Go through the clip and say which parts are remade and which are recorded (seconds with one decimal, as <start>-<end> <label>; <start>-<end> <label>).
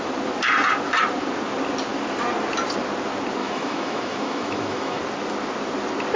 0.0-3.4 recorded; 3.4-5.0 remade; 5.0-6.2 recorded